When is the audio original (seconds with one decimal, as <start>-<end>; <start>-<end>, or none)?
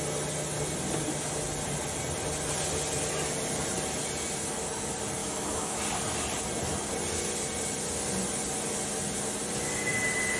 0.0-5.2; 5.8-10.4